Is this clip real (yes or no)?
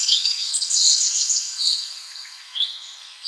no